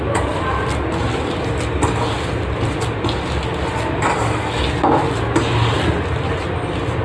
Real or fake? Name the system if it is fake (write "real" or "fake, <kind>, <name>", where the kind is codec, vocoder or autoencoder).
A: real